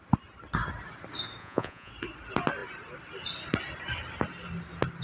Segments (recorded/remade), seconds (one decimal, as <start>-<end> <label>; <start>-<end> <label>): 0.0-1.4 recorded; 1.4-1.9 remade; 1.9-5.0 recorded